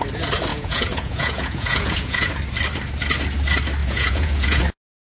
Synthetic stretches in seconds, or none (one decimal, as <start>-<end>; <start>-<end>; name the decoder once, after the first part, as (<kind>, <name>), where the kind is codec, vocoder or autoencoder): 0.5-2.3 (vocoder, Vocos); 3.8-4.6

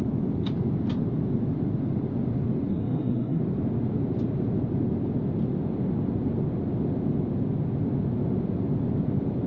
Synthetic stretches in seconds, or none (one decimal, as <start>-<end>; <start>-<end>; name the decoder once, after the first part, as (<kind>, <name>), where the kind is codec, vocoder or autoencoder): 2.7-3.4 (codec, SNAC)

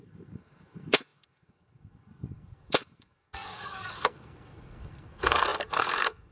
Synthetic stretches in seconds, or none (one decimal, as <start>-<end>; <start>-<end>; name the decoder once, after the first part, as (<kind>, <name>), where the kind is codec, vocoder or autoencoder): 0.0-6.3 (codec, SNAC)

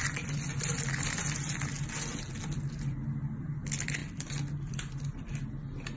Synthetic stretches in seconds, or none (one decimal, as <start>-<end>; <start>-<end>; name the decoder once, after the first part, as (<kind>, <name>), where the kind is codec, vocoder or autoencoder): none

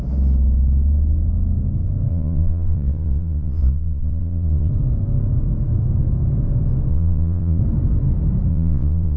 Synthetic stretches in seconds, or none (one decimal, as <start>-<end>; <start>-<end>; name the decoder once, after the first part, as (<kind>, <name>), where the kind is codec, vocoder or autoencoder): 2.1-4.7 (vocoder, Vocos); 6.9-7.6; 8.5-9.2

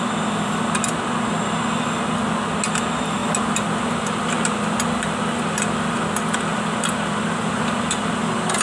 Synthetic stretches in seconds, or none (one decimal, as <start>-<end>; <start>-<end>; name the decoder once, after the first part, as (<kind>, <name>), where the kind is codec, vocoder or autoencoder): none

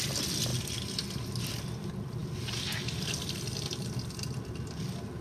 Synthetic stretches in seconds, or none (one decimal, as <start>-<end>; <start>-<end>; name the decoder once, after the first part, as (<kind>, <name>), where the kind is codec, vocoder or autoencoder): none

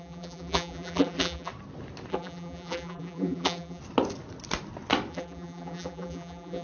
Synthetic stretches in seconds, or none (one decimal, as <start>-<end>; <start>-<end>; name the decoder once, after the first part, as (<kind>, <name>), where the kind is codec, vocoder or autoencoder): 0.0-1.5 (vocoder, BigVGAN v2); 2.1-3.8; 5.1-6.6